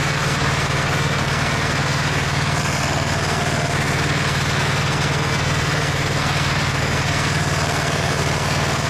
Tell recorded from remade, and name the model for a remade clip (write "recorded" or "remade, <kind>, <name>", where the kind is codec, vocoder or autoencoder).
remade, codec, SNAC